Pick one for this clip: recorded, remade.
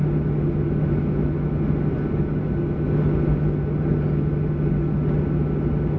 recorded